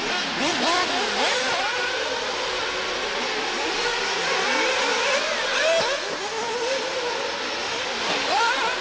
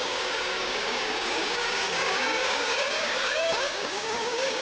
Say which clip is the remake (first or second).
second